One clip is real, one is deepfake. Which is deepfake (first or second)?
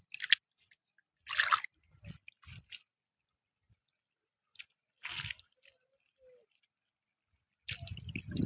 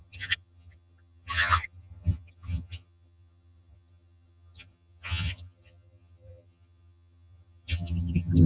second